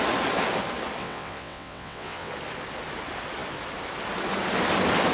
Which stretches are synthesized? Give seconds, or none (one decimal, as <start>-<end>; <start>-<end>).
1.0-2.3